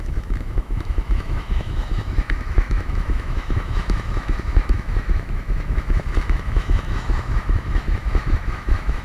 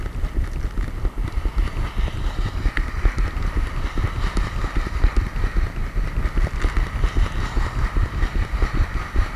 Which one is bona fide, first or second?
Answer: second